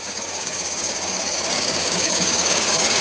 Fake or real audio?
fake